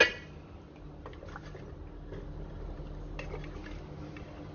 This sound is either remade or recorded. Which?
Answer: recorded